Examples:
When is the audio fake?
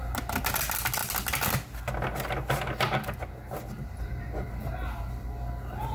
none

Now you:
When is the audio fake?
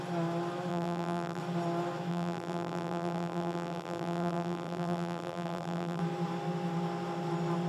0.7-1.4; 2.1-6.0